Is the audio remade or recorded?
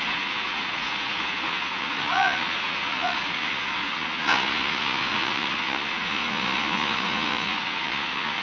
remade